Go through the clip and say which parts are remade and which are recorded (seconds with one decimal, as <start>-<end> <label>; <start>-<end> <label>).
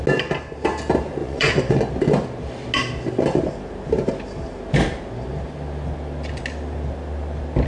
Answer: 0.0-1.2 recorded; 1.2-1.8 remade; 1.8-7.7 recorded